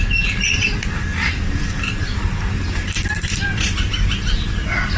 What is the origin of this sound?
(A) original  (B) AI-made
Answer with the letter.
B